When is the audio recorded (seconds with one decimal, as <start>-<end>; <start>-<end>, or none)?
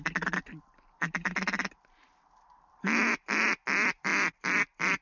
0.0-5.0